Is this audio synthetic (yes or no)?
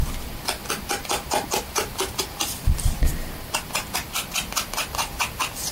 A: no